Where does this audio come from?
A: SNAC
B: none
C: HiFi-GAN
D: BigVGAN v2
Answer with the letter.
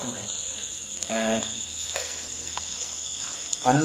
A